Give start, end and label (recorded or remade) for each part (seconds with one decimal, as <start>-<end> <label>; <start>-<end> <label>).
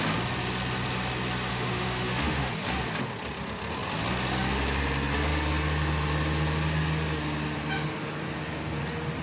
0.0-1.5 recorded; 1.5-2.5 remade; 2.5-9.2 recorded